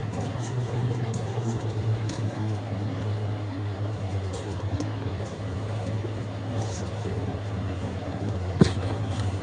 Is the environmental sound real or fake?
fake